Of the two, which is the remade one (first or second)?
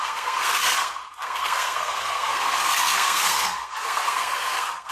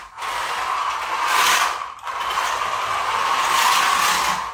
first